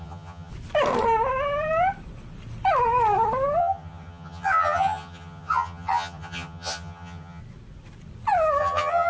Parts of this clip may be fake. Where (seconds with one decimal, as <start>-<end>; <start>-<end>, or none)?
0.0-0.5; 3.6-7.4; 8.6-9.1